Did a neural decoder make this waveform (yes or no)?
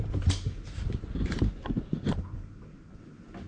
no